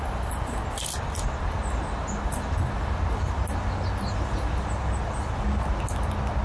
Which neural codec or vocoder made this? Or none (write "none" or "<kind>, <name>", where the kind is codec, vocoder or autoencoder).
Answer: none